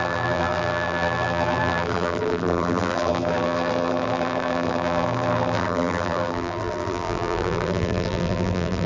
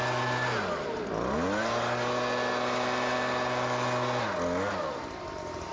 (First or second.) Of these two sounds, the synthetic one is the first